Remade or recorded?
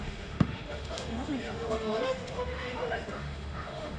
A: remade